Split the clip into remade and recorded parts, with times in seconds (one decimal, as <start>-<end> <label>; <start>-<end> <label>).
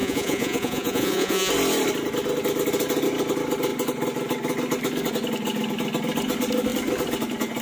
0.0-1.5 remade; 1.5-7.6 recorded